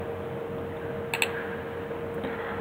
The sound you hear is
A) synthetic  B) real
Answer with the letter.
B